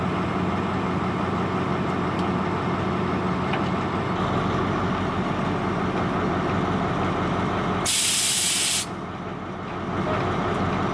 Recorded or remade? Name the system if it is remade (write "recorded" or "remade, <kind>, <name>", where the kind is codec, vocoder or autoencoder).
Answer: recorded